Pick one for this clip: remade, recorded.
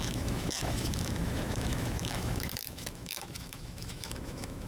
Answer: remade